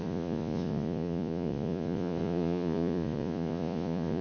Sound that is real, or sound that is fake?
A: fake